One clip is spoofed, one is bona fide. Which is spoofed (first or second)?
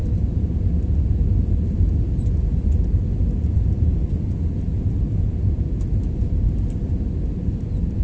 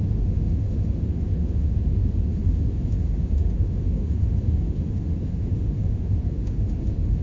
second